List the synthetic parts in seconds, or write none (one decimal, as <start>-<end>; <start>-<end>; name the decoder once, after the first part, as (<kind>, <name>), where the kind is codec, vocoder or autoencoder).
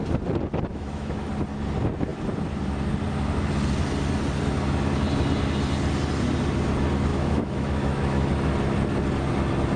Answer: 0.7-1.2 (autoencoder, DAC-VAE); 7.1-8.3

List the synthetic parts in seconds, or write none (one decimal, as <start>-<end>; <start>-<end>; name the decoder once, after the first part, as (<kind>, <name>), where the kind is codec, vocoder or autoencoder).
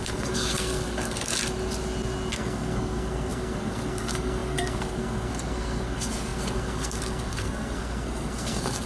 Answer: 0.0-1.3 (codec, SNAC); 2.3-8.9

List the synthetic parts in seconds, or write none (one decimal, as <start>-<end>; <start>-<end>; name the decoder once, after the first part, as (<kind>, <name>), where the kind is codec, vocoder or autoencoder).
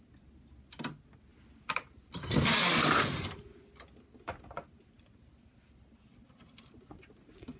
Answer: none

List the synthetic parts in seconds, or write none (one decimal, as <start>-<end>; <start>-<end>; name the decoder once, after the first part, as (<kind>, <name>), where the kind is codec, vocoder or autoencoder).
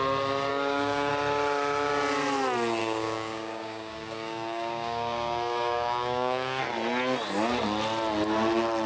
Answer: 0.5-1.1 (codec, DAC); 2.8-6.6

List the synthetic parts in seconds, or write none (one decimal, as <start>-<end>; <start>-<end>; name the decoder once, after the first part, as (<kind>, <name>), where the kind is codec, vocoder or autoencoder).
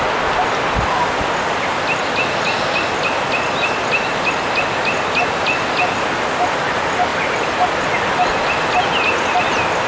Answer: none